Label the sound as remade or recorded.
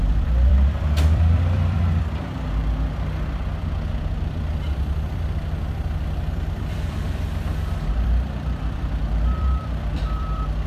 remade